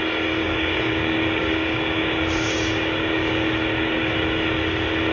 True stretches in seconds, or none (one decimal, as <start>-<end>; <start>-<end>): 0.0-0.4; 3.5-5.1